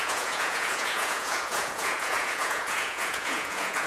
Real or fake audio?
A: fake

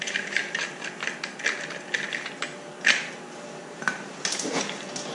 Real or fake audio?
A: real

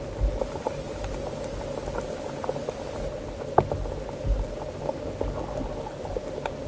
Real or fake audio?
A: real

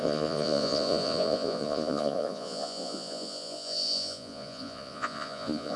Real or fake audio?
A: fake